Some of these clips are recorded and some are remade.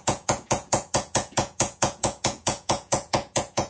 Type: remade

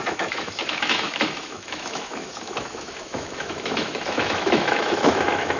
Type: remade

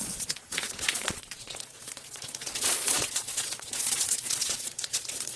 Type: remade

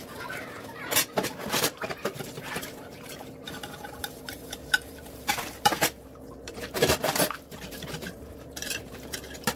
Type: remade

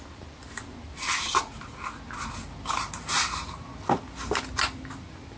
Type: recorded